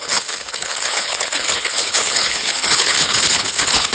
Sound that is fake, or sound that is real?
fake